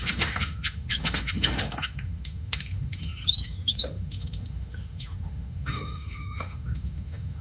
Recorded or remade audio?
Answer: remade